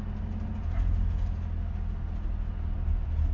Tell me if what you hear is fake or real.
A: real